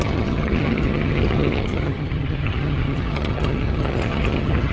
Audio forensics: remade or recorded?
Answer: remade